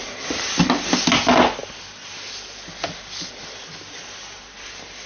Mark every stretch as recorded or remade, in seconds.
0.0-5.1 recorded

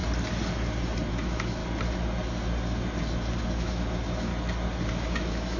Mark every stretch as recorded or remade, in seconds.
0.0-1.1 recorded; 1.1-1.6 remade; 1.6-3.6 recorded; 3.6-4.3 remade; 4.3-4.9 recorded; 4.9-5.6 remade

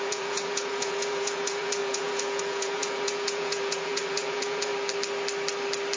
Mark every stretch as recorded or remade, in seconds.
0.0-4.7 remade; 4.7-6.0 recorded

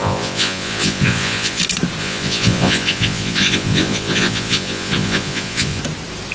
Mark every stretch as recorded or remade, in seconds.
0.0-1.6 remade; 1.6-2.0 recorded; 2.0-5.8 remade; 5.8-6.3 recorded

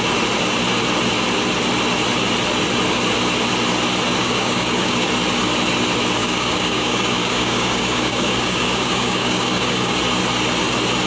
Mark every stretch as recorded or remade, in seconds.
0.0-4.2 recorded; 4.2-5.1 remade; 5.1-6.2 recorded; 6.2-10.0 remade; 10.0-11.1 recorded